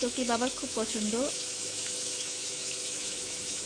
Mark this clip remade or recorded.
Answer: remade